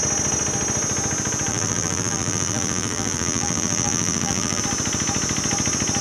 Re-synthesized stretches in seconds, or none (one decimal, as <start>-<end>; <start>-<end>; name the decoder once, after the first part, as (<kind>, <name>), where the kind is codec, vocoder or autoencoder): 1.5-4.6 (vocoder, BigVGAN v2)